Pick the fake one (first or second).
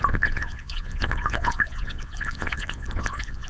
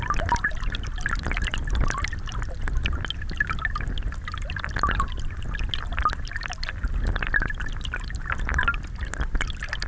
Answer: first